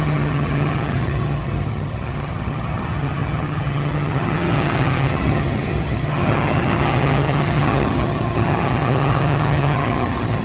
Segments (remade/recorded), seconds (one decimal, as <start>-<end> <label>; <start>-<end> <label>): 0.0-10.4 remade